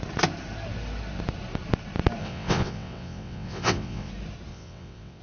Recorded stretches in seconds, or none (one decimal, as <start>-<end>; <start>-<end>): 0.0-2.2; 4.1-4.5